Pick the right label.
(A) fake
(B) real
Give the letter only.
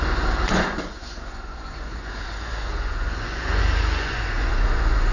A